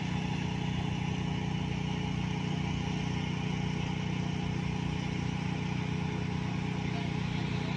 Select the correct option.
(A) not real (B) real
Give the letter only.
B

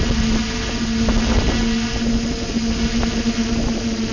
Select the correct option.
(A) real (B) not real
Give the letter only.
A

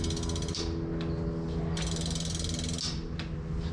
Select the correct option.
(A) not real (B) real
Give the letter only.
B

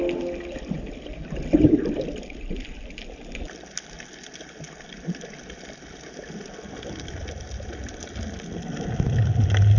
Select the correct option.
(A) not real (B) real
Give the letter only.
B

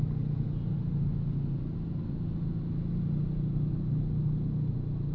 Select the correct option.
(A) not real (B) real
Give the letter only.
B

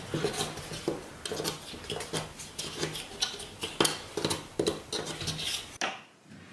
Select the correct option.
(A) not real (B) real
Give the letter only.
B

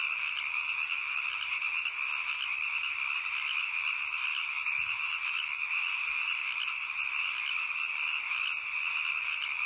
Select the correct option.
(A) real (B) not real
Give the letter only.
A